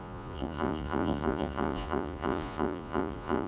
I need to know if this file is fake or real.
fake